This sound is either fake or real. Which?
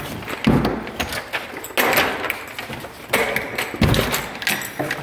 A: real